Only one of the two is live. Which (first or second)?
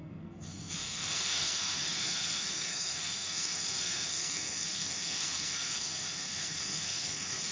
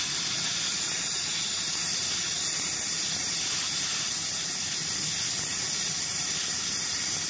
second